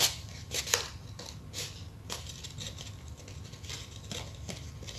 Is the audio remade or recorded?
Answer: recorded